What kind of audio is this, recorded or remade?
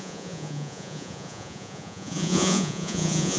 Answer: remade